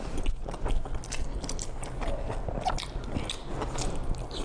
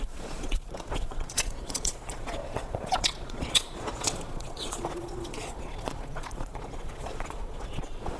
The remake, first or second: second